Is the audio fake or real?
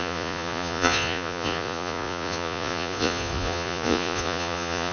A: fake